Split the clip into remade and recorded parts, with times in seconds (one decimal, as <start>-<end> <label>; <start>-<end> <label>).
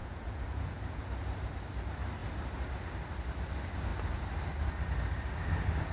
0.0-1.0 remade; 1.0-5.9 recorded